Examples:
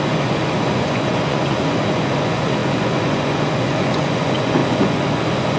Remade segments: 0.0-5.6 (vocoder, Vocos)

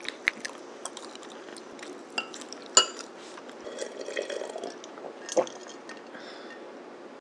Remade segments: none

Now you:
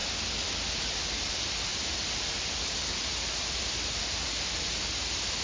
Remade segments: 1.7-3.7 (vocoder, BigVGAN v2)

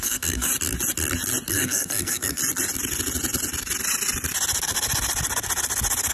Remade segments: 0.0-0.5 (codec, SNAC); 1.5-2.4

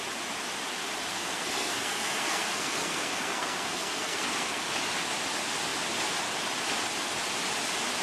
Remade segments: 1.1-4.6 (codec, SNAC)

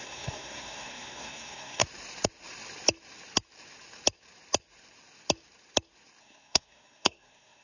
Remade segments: 0.0-1.8 (codec, SNAC); 6.2-7.6